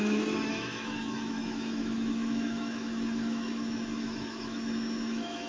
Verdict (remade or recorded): remade